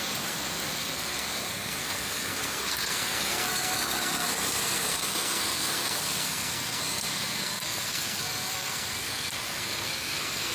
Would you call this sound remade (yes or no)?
yes